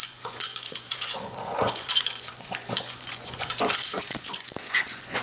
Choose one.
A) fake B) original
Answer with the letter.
A